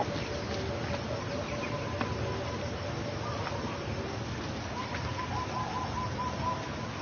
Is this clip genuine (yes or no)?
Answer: yes